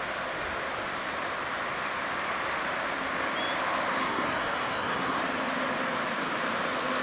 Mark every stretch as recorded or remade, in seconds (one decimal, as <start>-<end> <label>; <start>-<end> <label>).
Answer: 0.0-4.0 recorded; 4.0-5.2 remade; 5.2-7.0 recorded